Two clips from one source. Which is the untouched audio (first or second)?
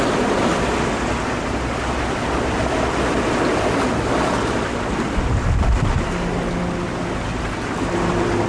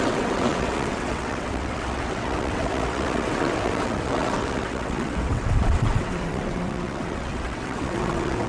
first